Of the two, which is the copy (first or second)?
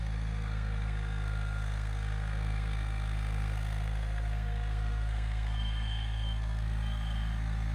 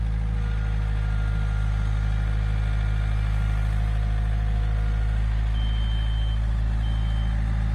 first